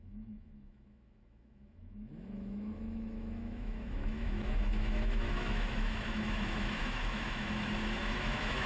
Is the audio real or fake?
fake